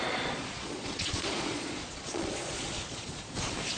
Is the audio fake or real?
fake